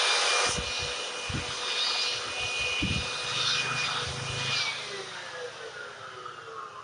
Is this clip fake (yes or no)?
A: no